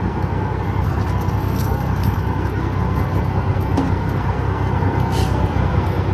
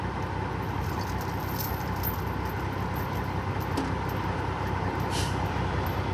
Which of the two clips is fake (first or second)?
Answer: first